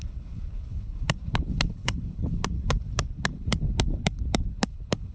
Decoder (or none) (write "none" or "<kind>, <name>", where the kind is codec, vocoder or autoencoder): codec, HILCodec